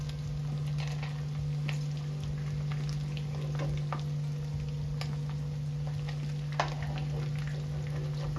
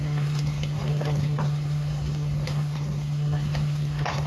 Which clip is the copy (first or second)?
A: second